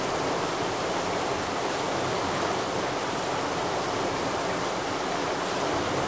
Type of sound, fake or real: real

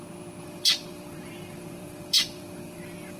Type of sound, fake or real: fake